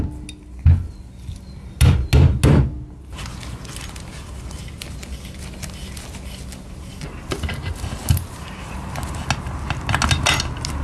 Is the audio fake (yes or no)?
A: no